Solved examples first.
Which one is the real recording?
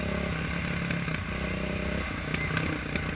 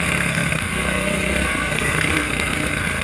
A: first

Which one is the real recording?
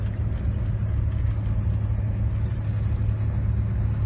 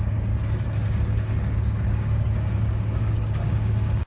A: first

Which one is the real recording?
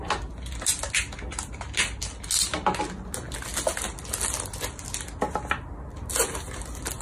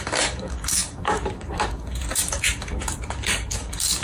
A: first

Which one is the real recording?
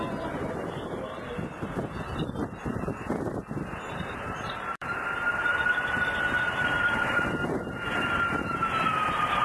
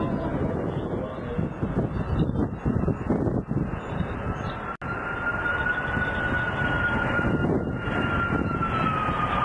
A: second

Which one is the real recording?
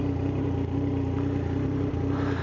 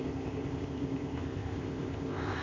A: first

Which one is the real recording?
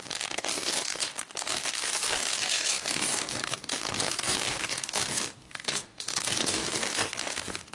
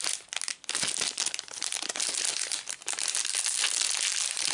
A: second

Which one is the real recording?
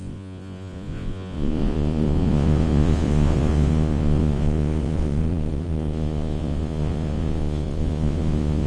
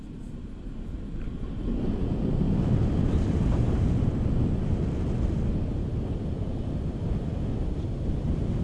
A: second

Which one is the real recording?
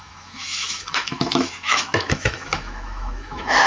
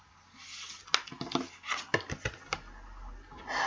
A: second